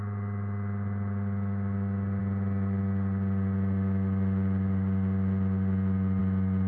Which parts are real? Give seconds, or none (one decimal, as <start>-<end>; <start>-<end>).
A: 0.0-6.7